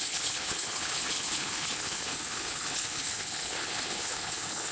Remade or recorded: remade